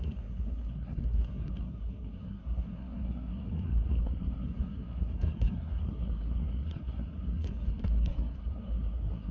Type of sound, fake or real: fake